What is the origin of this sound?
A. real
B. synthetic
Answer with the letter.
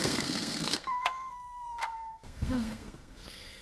B